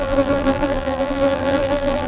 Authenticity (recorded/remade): remade